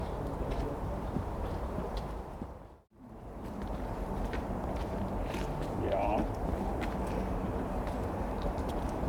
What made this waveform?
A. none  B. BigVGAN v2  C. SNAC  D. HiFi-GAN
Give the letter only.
B